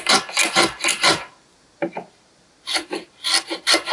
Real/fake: real